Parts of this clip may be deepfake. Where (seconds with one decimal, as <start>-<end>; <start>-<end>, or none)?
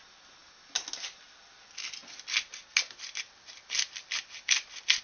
none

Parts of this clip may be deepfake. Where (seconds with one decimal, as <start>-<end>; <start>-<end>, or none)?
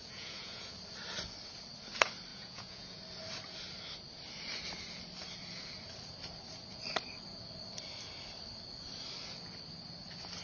0.0-0.7; 2.3-3.0